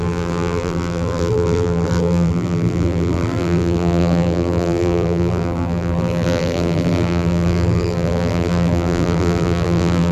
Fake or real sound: fake